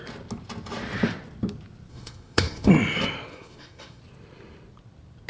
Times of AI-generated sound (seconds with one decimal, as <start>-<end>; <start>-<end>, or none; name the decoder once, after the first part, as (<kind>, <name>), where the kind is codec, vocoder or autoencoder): 1.9-2.7 (codec, SNAC); 3.3-4.0